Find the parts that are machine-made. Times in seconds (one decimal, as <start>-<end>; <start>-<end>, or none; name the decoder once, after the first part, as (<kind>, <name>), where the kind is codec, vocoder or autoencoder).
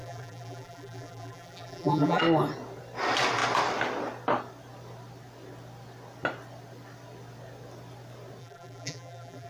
0.0-2.2 (vocoder, BigVGAN v2); 8.4-9.5